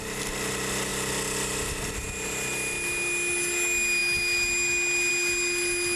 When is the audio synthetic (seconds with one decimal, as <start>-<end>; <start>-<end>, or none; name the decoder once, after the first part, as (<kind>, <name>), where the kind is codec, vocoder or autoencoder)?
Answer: none